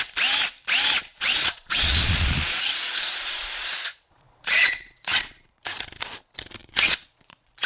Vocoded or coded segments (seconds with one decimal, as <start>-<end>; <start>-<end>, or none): 1.0-5.6; 6.6-7.7